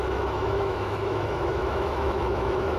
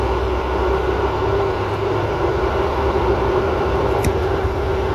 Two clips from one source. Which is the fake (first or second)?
first